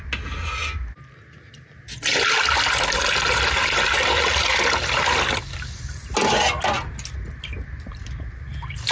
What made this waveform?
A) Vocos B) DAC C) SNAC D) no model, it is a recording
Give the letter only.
D